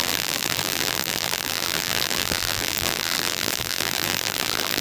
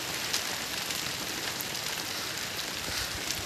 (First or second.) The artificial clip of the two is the first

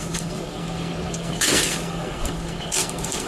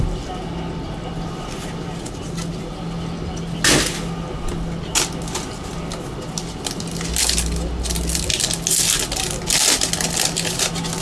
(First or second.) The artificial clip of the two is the first